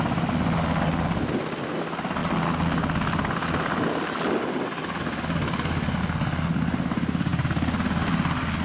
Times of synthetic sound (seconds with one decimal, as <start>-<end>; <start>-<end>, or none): none